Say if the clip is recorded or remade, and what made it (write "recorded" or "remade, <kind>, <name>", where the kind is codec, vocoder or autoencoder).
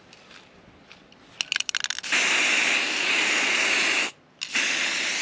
recorded